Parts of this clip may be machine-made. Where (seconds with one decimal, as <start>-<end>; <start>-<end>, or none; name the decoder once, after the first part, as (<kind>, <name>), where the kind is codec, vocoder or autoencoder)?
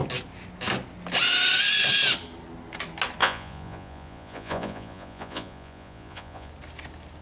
3.2-6.5 (vocoder, Vocos)